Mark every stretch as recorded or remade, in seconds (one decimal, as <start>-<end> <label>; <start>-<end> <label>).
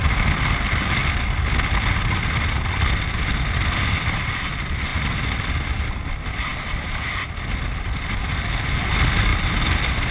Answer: 0.0-1.0 remade; 1.0-4.3 recorded; 4.3-4.9 remade; 4.9-6.1 recorded; 6.1-6.5 remade; 6.5-7.8 recorded; 7.8-9.3 remade; 9.3-10.1 recorded